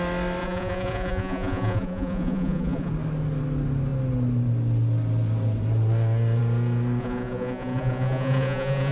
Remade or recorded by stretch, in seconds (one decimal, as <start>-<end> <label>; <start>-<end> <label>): 0.0-0.4 recorded; 0.4-2.9 remade; 2.9-7.0 recorded; 7.0-8.9 remade